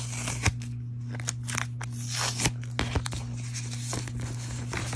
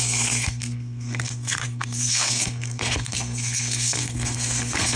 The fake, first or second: second